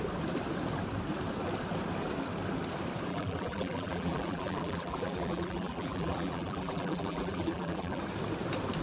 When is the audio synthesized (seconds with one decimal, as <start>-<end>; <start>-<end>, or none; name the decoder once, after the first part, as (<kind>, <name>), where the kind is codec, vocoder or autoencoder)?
3.1-8.0 (vocoder, BigVGAN v2)